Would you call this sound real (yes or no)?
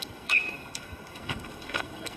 no